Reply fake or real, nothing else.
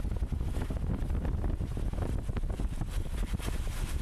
real